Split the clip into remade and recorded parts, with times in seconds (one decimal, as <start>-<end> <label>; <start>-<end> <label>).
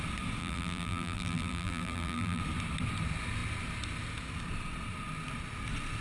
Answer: 0.0-0.4 recorded; 0.4-2.4 remade; 2.4-6.0 recorded